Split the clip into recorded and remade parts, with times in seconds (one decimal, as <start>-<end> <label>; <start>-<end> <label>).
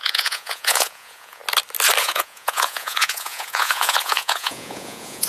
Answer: 0.0-1.4 remade; 1.4-2.0 recorded; 2.0-5.3 remade